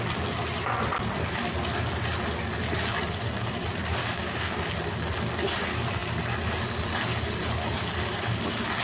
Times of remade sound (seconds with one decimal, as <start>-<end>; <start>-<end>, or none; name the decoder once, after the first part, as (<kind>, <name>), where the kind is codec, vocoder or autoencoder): 4.0-4.6 (codec, DAC)